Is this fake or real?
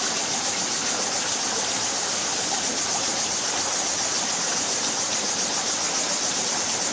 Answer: real